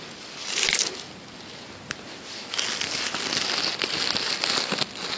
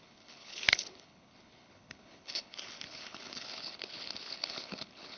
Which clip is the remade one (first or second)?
second